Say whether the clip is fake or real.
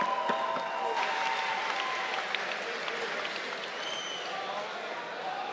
real